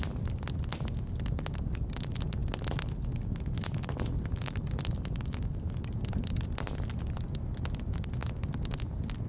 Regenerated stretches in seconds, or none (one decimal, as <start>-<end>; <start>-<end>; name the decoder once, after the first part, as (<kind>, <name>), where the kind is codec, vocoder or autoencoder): none